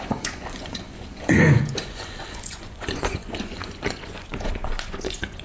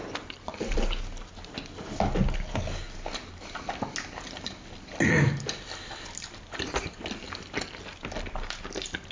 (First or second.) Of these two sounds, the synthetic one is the first